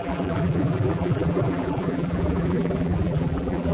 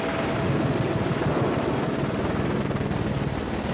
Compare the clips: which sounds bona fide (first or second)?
second